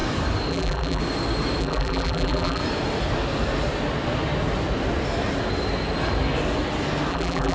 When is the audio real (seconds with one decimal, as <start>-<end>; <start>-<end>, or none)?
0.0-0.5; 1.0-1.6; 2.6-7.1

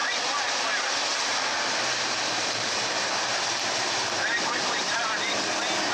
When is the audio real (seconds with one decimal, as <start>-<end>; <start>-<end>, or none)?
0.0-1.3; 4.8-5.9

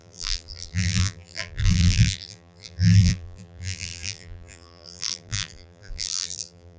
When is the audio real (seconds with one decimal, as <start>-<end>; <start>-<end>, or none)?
none

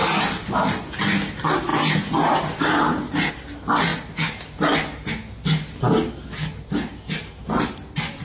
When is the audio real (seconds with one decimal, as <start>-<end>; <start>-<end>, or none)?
0.0-8.2

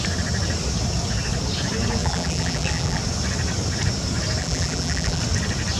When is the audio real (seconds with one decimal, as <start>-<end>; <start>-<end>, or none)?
0.0-2.0; 3.0-4.4; 5.2-5.8

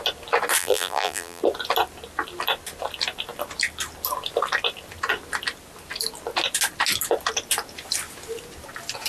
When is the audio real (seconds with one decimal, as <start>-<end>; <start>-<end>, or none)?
0.0-0.6; 1.4-9.1

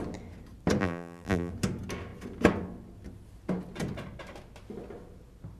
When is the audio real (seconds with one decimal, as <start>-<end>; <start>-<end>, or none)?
0.0-0.8; 1.5-5.6

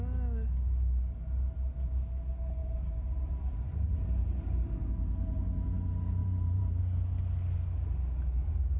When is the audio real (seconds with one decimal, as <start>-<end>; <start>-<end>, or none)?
0.0-2.6; 4.9-6.2; 6.8-8.8